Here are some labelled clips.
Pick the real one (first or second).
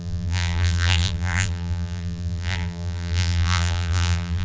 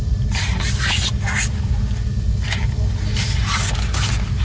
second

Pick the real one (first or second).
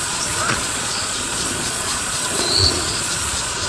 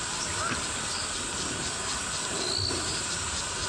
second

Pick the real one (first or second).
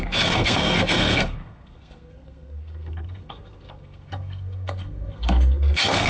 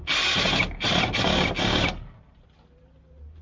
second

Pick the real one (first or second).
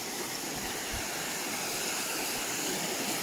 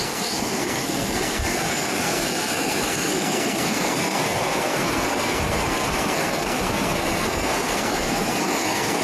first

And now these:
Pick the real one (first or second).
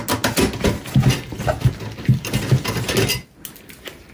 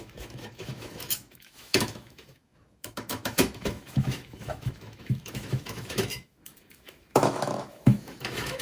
first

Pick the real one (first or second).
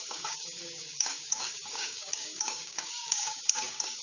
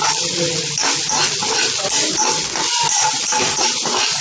second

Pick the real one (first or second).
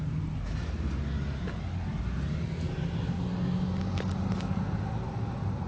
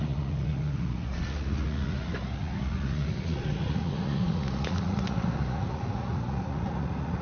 first